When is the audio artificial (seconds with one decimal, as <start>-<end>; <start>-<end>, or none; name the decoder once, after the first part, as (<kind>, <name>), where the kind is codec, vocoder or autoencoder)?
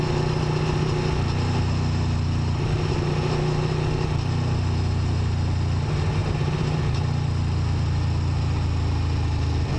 6.2-6.8 (vocoder, BigVGAN v2)